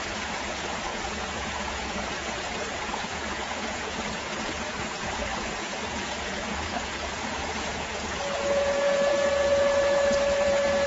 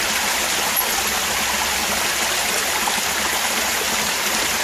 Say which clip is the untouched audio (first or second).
second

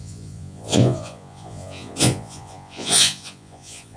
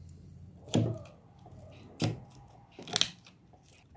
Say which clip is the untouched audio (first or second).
second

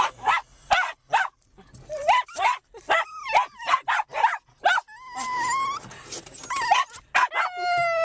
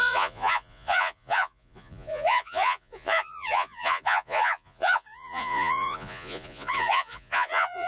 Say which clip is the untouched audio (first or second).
first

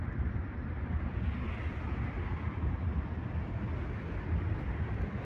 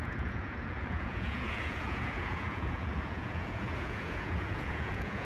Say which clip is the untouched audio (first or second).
first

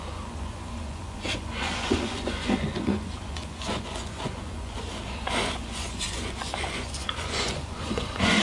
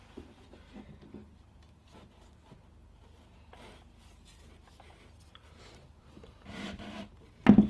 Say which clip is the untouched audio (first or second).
second